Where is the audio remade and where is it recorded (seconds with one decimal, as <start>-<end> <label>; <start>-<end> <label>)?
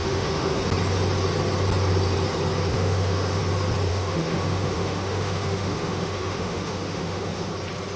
0.0-0.6 remade; 0.6-2.7 recorded; 2.7-3.4 remade; 3.4-3.9 recorded; 3.9-7.5 remade; 7.5-8.0 recorded